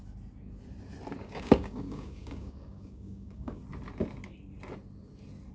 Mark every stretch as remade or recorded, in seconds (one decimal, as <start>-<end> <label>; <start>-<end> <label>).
0.0-1.2 recorded; 1.2-3.6 remade; 3.6-5.5 recorded